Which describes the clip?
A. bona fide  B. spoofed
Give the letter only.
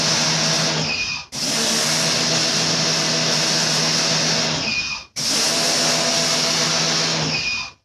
A